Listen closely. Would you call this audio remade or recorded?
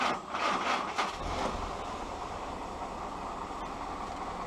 recorded